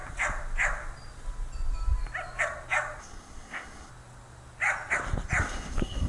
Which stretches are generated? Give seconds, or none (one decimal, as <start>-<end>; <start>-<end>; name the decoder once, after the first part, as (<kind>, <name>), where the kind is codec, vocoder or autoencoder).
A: 3.0-3.9 (codec, SNAC); 5.4-6.1